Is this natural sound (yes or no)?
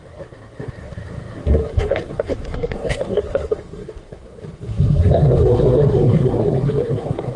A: no